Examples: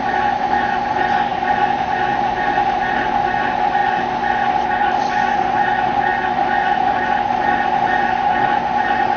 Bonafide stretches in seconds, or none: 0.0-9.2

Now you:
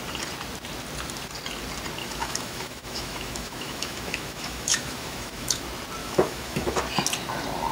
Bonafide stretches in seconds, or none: 0.0-2.0; 5.6-6.0; 6.8-7.7